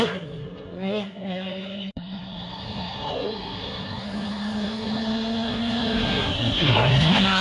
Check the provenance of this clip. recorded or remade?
remade